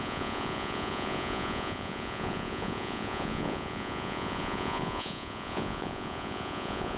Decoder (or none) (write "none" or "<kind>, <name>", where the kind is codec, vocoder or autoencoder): vocoder, Vocos